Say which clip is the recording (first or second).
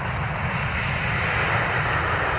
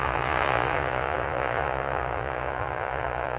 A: first